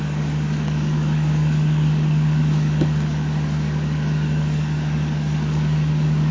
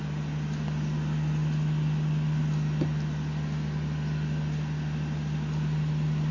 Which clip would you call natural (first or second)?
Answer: second